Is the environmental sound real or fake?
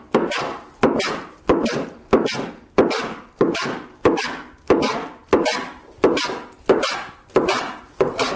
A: real